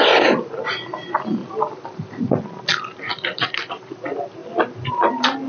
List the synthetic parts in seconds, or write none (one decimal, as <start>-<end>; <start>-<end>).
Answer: 1.4-2.2; 3.1-3.9; 4.4-4.9